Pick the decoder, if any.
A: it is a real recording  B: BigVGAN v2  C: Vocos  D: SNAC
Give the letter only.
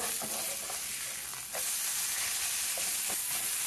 A